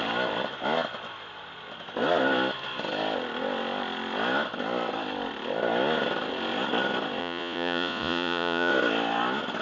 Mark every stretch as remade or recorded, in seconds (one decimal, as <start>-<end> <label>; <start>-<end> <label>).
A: 0.0-7.2 recorded; 7.2-8.7 remade; 8.7-9.6 recorded

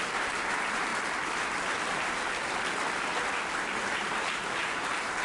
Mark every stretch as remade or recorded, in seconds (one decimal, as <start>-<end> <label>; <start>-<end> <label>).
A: 0.0-0.9 remade; 0.9-3.8 recorded; 3.8-5.2 remade

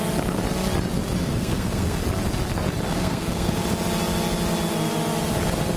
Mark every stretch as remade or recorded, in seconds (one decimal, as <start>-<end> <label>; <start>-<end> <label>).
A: 0.0-1.2 recorded; 1.2-2.0 remade; 2.0-2.9 recorded; 2.9-3.5 remade; 3.5-5.8 recorded